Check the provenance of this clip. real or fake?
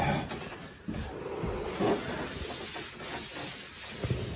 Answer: real